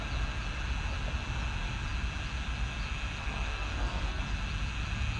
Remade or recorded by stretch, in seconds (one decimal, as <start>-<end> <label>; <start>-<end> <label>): 0.0-3.2 recorded; 3.2-4.2 remade; 4.2-5.2 recorded